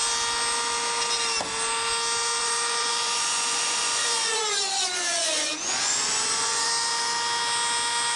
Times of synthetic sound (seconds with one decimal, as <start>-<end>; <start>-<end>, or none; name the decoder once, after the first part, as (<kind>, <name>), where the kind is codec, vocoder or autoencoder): 2.4-6.7 (vocoder, Vocos)